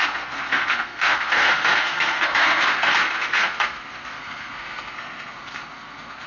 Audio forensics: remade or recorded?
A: remade